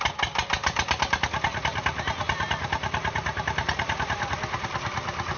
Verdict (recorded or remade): recorded